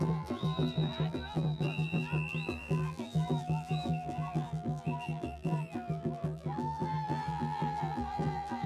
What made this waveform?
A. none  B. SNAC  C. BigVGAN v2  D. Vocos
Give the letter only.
C